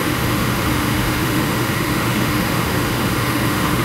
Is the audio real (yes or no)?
no